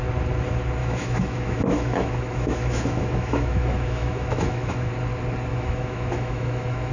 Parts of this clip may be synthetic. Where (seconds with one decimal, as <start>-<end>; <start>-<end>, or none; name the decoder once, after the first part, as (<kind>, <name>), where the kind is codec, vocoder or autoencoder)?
0.8-4.9 (autoencoder, DAC-VAE); 5.5-6.9